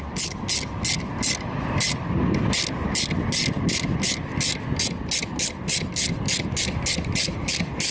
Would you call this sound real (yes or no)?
yes